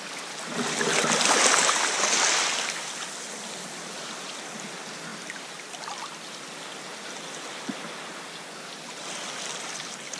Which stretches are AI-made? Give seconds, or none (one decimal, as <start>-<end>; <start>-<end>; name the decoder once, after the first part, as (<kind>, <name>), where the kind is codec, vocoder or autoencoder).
none